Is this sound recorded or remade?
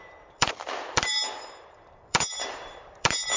remade